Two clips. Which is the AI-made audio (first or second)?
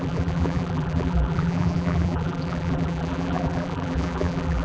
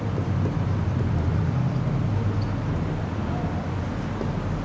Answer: first